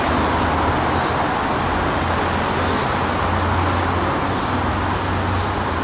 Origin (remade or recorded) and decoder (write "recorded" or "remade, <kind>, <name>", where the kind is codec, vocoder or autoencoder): recorded